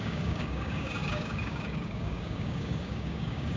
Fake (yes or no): yes